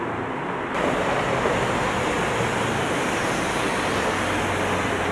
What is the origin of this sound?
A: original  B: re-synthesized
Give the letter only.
A